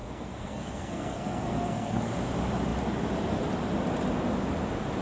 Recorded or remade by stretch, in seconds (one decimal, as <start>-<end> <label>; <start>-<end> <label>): 0.0-2.1 remade; 2.1-5.0 recorded